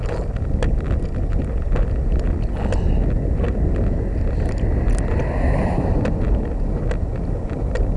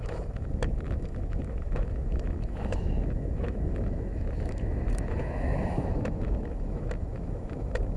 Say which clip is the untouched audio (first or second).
first